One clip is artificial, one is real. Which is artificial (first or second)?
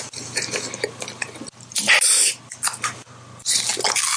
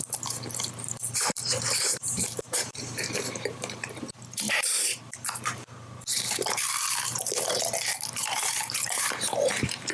second